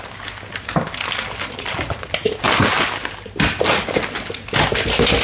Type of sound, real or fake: real